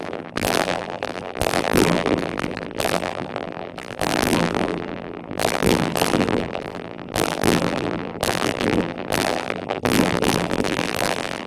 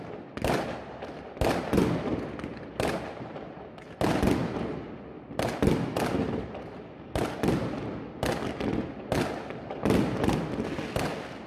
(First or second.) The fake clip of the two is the first